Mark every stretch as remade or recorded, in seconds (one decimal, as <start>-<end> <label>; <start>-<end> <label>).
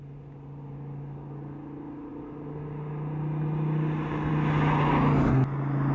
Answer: 0.0-5.9 recorded